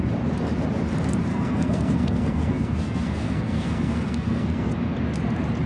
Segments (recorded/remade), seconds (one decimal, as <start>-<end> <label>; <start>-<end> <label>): 0.0-1.3 recorded; 1.3-4.7 remade; 4.7-5.7 recorded